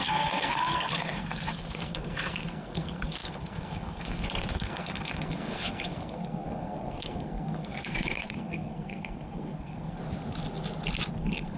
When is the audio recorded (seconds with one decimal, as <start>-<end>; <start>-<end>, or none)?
10.0-11.1